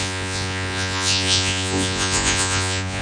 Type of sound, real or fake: fake